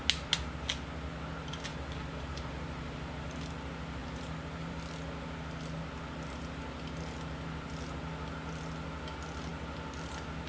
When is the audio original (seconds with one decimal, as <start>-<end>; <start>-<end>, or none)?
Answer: 0.0-1.7; 3.4-4.0; 4.8-10.5